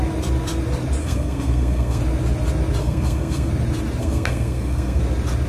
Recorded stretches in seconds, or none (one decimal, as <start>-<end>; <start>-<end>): 0.0-1.0; 2.0-2.8; 3.5-4.0; 5.0-5.5